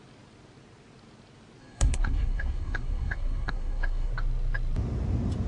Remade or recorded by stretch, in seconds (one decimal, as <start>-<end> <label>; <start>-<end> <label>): 0.0-1.6 recorded; 1.6-4.1 remade; 4.1-5.5 recorded